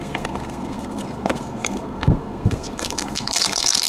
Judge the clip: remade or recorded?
remade